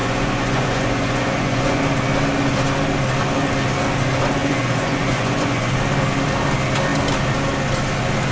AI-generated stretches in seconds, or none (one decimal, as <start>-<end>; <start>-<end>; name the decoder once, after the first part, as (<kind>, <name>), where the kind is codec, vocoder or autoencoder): 0.0-1.8 (vocoder, Vocos); 4.4-5.7